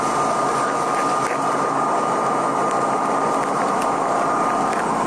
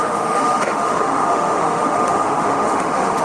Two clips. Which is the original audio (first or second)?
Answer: first